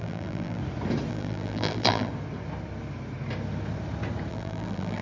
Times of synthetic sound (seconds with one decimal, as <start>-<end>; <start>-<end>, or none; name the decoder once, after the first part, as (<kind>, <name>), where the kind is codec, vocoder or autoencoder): 0.0-0.6 (vocoder, BigVGAN v2); 1.1-2.1; 4.3-5.0